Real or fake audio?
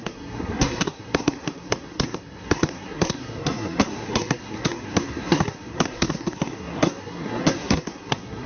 fake